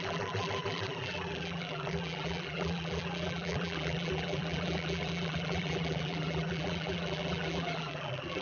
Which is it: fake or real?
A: fake